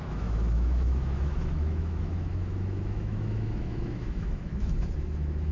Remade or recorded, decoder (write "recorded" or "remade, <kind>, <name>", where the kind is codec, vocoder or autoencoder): remade, autoencoder, DAC-VAE